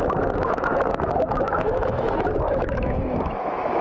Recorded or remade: remade